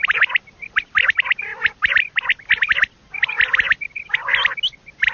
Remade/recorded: recorded